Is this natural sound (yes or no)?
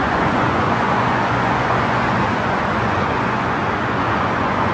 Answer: no